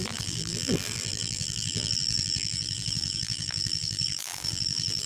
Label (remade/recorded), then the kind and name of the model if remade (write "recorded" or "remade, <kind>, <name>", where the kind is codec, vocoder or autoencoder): remade, vocoder, BigVGAN v2